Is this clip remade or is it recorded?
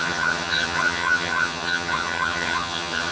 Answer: remade